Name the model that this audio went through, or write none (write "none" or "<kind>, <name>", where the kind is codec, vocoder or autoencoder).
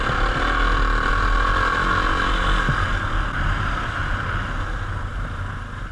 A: none